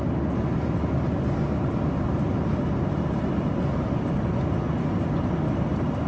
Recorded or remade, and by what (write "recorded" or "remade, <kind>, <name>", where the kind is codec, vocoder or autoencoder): recorded